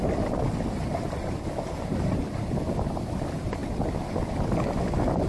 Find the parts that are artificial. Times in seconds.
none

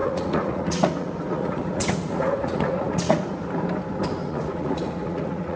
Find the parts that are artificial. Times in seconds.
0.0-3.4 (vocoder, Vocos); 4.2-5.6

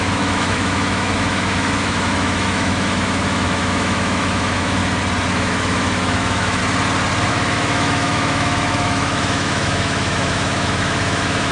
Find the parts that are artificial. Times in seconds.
0.0-4.8 (autoencoder, DAC-VAE); 5.3-6.6; 7.3-11.5

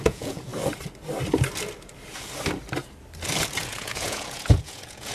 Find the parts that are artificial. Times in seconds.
0.0-0.5 (vocoder, Vocos); 3.6-5.1

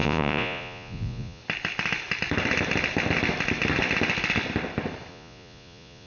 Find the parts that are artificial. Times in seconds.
0.0-1.4 (vocoder, Vocos); 5.1-6.1

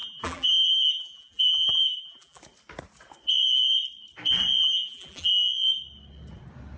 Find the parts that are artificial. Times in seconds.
0.0-2.4 (vocoder, BigVGAN v2); 4.6-5.3

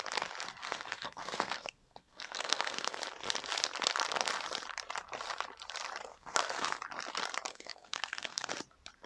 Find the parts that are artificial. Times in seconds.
0.6-3.0 (codec, SNAC); 6.1-6.8; 7.5-8.5